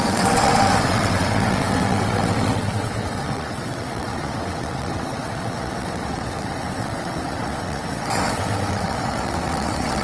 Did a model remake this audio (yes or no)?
yes